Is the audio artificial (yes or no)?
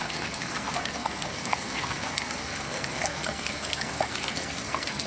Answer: yes